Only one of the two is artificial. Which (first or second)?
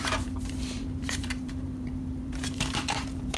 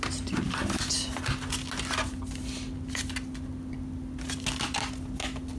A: first